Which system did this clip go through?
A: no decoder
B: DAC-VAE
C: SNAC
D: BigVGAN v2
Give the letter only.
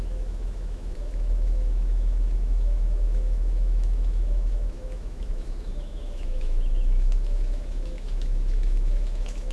B